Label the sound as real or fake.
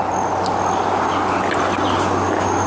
real